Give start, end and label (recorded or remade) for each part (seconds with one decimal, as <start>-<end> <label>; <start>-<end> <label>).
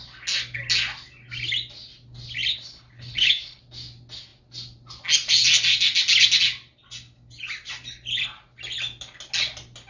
0.0-2.5 recorded; 2.5-3.6 remade; 3.6-9.9 recorded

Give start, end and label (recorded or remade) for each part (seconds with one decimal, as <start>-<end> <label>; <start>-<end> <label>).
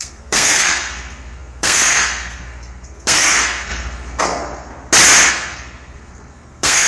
0.0-4.7 remade; 4.7-5.3 recorded; 5.3-6.9 remade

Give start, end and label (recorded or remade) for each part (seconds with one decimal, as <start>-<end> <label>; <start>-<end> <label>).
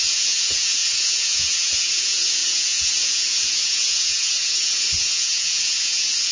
0.0-6.3 remade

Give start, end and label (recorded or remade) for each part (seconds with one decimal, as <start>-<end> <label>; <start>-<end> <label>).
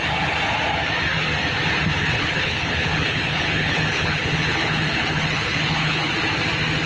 0.0-2.0 recorded; 2.0-6.1 remade; 6.1-6.9 recorded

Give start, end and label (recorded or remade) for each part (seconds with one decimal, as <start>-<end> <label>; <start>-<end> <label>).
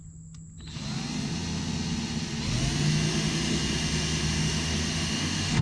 0.0-3.1 recorded; 3.1-3.6 remade; 3.6-4.4 recorded; 4.4-5.6 remade